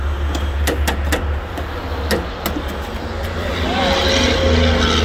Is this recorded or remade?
recorded